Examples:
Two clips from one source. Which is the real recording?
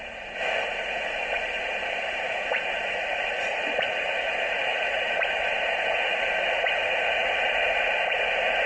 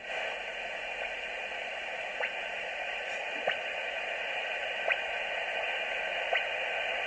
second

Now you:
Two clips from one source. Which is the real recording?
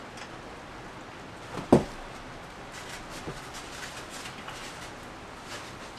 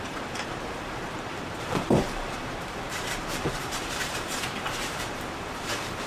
first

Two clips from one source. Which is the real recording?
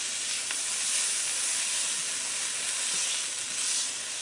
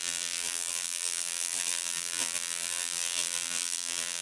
first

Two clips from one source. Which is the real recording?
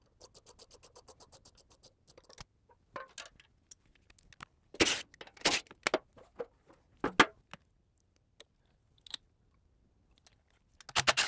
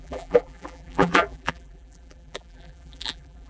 first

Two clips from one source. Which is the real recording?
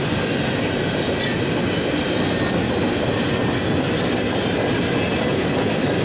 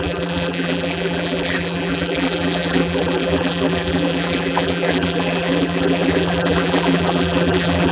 first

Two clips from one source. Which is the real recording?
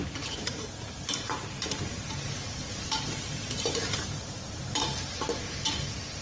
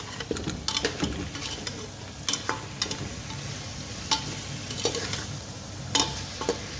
second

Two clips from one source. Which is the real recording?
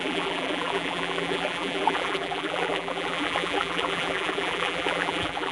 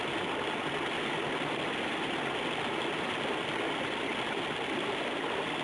second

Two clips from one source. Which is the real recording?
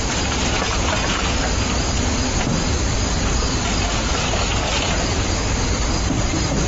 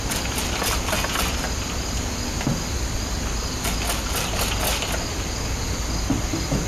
second